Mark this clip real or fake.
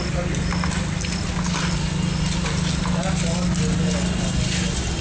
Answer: real